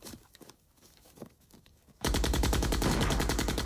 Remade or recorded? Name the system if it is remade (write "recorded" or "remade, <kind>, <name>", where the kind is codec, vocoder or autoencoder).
remade, codec, DAC